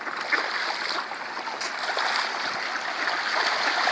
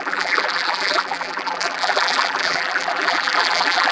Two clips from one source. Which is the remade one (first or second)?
second